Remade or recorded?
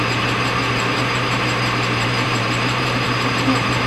remade